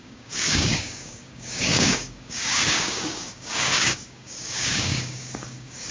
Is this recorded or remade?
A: remade